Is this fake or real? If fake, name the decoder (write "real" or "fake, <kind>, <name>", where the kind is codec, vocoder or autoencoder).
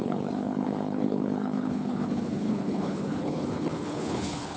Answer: fake, codec, HILCodec